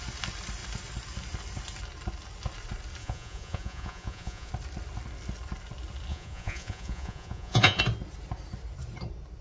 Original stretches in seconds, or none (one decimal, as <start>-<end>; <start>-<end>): 0.0-3.0; 4.5-6.1; 7.8-9.4

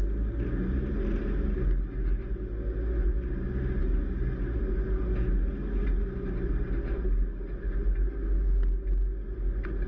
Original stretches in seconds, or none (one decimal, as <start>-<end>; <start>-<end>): 0.0-9.9